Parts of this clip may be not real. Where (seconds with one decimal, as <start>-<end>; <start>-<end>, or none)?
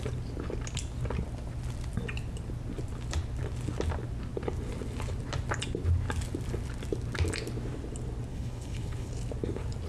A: 8.3-9.1